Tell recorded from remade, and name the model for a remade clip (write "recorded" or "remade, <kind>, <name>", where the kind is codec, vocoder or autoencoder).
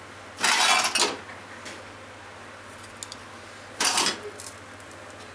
recorded